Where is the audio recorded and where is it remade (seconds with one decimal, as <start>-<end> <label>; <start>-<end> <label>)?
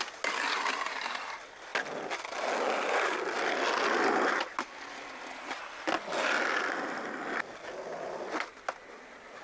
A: 0.0-9.4 recorded